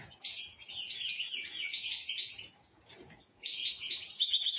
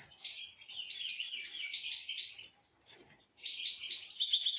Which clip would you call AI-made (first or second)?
first